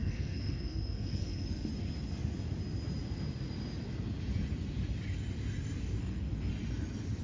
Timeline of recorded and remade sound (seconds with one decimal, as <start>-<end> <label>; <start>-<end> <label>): 0.0-1.7 remade; 1.7-6.0 recorded; 6.0-6.5 remade; 6.5-7.2 recorded